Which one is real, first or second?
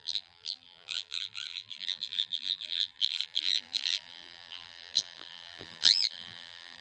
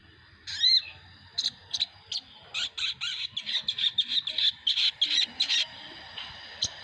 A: second